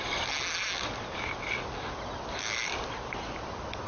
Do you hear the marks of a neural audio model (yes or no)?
no